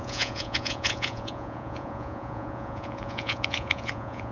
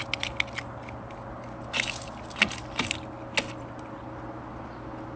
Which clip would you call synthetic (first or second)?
first